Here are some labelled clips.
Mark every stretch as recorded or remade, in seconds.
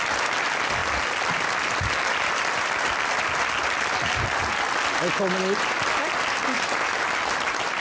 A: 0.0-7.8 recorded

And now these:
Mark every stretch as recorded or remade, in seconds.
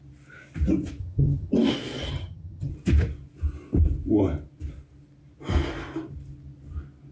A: 0.0-1.0 recorded; 1.0-1.5 remade; 1.5-2.1 recorded; 2.1-2.7 remade; 2.7-7.1 recorded